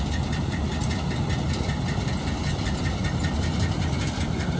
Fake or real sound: real